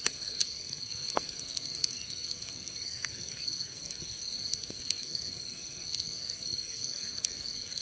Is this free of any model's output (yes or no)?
no